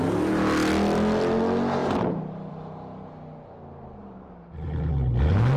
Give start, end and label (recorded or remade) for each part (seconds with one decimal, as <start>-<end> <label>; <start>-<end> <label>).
0.0-1.8 recorded; 1.8-2.5 remade; 2.5-4.0 recorded; 4.0-4.9 remade; 4.9-5.6 recorded